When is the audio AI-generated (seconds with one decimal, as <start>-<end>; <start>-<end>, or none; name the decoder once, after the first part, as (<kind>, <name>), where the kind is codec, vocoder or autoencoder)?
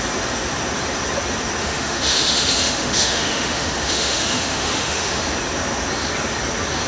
1.6-5.2 (autoencoder, DAC-VAE)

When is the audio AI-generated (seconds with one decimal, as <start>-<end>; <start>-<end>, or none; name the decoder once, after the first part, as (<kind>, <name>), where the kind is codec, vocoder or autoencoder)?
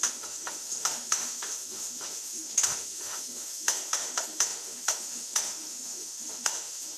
0.0-7.0 (autoencoder, DAC-VAE)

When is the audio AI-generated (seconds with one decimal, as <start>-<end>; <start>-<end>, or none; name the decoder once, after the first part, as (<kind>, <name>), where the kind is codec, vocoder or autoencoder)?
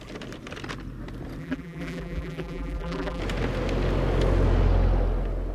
1.4-3.2 (vocoder, BigVGAN v2)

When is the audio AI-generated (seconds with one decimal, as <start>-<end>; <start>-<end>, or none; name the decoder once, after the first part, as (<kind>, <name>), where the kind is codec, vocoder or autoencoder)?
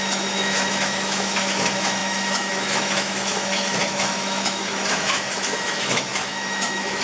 0.0-7.0 (autoencoder, DAC-VAE)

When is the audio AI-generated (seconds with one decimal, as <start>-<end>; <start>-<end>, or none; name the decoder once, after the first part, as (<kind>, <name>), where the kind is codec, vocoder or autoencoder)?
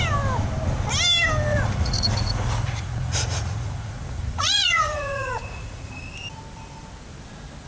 1.5-5.9 (vocoder, Vocos)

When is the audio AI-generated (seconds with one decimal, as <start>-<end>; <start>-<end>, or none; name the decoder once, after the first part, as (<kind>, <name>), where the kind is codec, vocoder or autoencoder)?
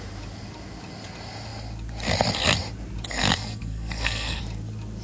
3.2-4.4 (codec, SNAC)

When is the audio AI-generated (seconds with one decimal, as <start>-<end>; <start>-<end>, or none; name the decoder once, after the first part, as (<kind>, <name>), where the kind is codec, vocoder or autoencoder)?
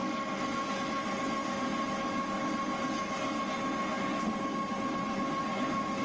none